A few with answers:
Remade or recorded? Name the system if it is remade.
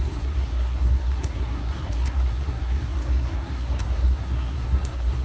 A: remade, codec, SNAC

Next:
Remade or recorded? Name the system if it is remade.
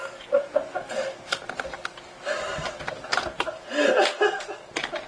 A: recorded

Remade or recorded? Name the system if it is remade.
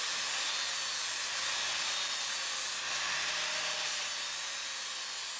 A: remade, vocoder, BigVGAN v2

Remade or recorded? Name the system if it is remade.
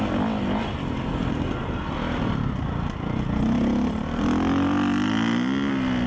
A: recorded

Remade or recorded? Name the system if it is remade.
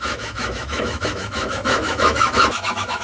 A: remade, autoencoder, DAC-VAE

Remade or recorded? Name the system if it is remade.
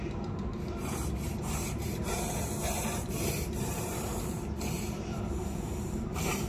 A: remade, vocoder, BigVGAN v2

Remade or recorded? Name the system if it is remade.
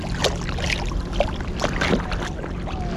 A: recorded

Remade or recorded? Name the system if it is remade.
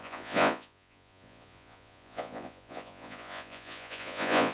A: remade, vocoder, Vocos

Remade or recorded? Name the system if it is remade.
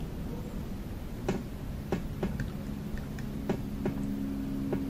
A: recorded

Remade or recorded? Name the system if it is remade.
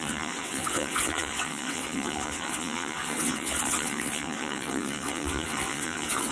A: remade, vocoder, WaveNeXt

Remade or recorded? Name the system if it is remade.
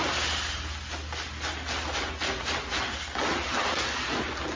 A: recorded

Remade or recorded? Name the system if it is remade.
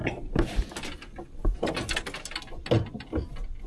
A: recorded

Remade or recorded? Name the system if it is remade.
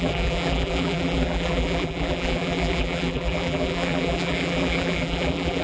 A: remade, vocoder, BigVGAN v2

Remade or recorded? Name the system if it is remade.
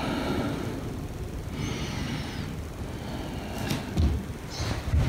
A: recorded